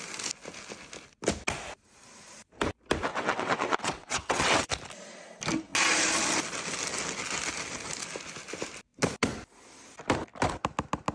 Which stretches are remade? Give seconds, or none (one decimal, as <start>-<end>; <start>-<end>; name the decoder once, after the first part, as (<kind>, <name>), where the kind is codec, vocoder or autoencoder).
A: 3.1-4.7 (vocoder, WaveNeXt)